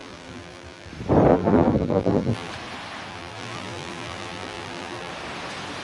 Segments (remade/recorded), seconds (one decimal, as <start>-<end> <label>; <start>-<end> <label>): 0.0-0.9 remade; 0.9-1.3 recorded; 1.3-2.5 remade; 2.5-3.1 recorded; 3.1-5.1 remade; 5.1-5.8 recorded